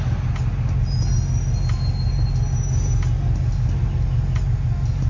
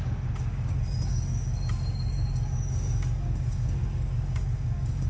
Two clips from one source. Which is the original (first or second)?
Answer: first